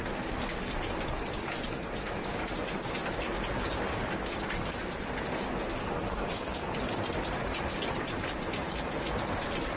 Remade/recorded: recorded